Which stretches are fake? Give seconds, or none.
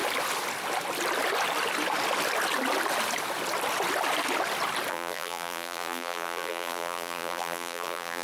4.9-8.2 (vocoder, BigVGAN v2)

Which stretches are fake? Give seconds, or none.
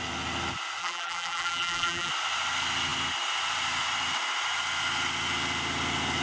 0.8-2.1 (vocoder, BigVGAN v2)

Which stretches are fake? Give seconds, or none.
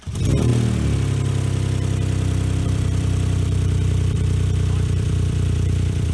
0.0-0.5 (vocoder, BigVGAN v2); 2.6-6.1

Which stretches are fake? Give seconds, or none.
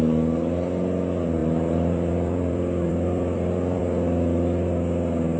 1.4-3.8 (vocoder, BigVGAN v2)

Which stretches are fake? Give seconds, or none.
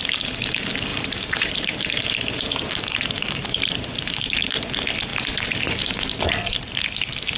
0.9-4.5 (vocoder, BigVGAN v2); 5.1-6.0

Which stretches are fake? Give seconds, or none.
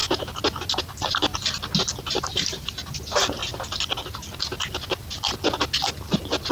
0.8-1.3 (vocoder, BigVGAN v2); 2.0-3.4